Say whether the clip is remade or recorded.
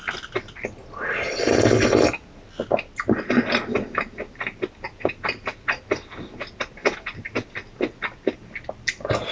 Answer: recorded